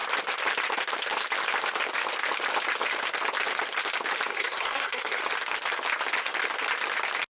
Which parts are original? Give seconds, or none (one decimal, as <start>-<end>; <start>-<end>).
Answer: 0.0-4.3; 5.2-7.3